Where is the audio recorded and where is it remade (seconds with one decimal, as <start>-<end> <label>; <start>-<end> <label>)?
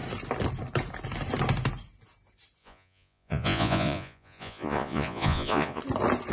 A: 0.0-2.6 recorded; 2.6-5.8 remade; 5.8-6.3 recorded